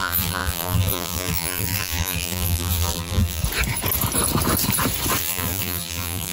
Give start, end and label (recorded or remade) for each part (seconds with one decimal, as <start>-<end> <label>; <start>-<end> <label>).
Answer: 0.0-3.4 remade; 3.4-5.2 recorded; 5.2-6.3 remade